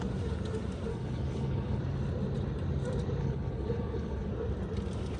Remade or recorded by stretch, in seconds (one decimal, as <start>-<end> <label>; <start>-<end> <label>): 0.0-0.9 recorded; 0.9-1.8 remade; 1.8-3.2 recorded; 3.2-4.3 remade; 4.3-5.2 recorded